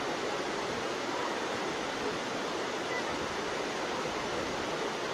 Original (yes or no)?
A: yes